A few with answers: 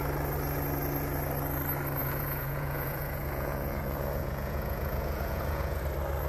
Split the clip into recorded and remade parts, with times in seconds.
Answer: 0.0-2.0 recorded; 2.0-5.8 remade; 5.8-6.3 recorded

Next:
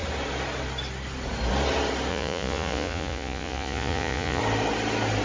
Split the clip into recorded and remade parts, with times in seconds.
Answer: 0.0-2.1 recorded; 2.1-4.4 remade; 4.4-5.2 recorded